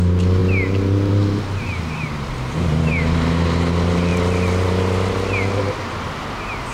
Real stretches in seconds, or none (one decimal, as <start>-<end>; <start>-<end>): 0.0-6.7